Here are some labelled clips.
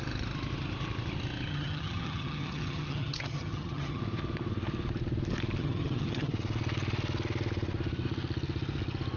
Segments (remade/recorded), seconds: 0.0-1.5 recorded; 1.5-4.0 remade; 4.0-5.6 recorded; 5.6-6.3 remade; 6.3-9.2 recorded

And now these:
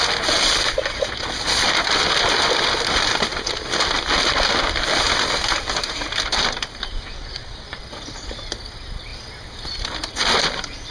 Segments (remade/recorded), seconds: 0.0-6.9 recorded; 6.9-7.8 remade; 7.8-10.9 recorded

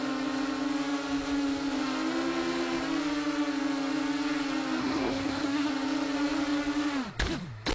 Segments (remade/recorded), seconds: 0.0-4.8 recorded; 4.8-5.7 remade; 5.7-7.7 recorded

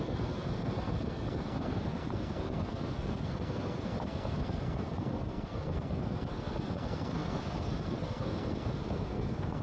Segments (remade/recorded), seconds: 0.0-9.6 remade